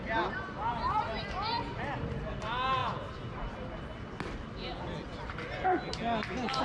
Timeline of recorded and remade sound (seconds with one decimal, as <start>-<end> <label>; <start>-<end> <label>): 0.0-6.6 recorded